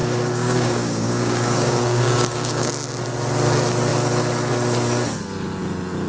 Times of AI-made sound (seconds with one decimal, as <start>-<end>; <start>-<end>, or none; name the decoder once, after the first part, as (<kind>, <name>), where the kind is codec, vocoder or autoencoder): 0.0-2.7 (codec, DAC)